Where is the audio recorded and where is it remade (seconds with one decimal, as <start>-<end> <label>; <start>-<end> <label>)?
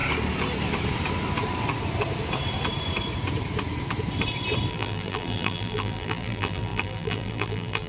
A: 0.0-4.7 recorded; 4.7-7.9 remade